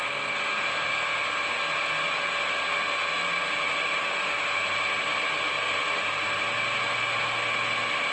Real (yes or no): yes